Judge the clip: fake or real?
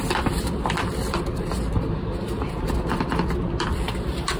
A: fake